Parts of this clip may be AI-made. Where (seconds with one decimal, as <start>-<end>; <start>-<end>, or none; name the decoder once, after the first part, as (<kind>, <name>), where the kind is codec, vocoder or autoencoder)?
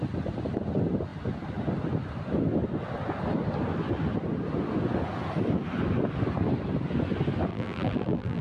7.5-8.4 (vocoder, BigVGAN v2)